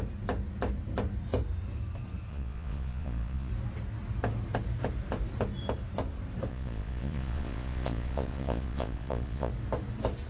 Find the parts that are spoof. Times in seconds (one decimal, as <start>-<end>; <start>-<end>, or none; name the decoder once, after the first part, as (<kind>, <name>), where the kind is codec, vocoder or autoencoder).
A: 2.3-3.5 (vocoder, Vocos); 6.5-9.5

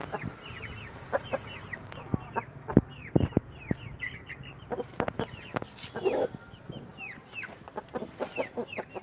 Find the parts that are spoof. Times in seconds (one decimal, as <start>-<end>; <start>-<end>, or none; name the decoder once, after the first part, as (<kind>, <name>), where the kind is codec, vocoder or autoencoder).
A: 3.1-8.3 (vocoder, BigVGAN v2)

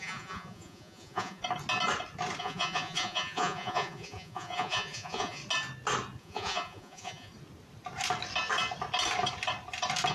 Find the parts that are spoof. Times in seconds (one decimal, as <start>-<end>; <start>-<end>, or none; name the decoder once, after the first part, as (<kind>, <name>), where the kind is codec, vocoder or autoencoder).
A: 0.0-1.4 (vocoder, Vocos); 2.4-5.4; 6.2-7.3

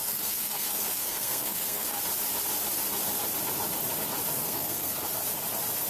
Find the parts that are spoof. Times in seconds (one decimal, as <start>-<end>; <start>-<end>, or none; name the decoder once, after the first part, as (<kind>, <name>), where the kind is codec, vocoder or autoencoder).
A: 0.0-2.0 (codec, SNAC); 4.4-5.0

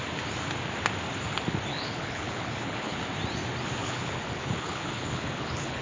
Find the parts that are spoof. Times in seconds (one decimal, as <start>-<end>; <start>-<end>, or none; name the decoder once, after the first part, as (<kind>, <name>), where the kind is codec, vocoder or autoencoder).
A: 1.7-3.0 (codec, HILCodec); 3.8-5.8

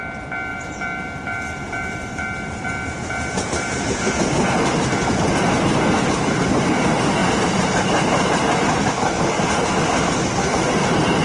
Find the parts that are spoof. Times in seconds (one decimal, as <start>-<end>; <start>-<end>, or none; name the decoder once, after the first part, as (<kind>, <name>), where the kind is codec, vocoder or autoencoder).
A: 0.5-4.1 (vocoder, BigVGAN v2); 7.2-8.9

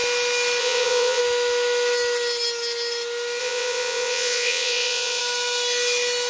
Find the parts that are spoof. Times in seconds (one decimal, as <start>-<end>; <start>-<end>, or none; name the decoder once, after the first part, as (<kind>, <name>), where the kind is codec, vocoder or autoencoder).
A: 0.6-1.2 (vocoder, WaveNeXt); 3.4-5.2

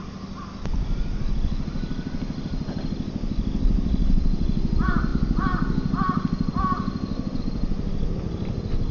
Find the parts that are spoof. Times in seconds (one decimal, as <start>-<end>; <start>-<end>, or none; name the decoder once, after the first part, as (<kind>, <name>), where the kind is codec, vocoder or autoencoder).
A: none